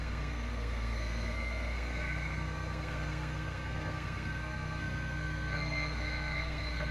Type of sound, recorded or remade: remade